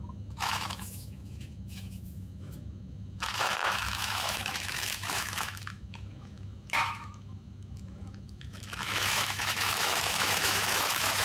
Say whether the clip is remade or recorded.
remade